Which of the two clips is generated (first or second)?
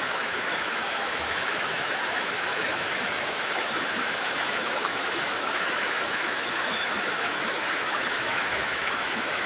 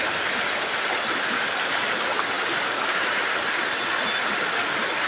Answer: first